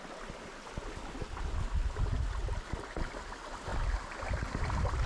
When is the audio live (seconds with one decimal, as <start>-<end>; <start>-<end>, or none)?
0.0-5.1